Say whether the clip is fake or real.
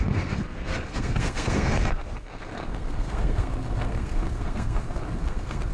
fake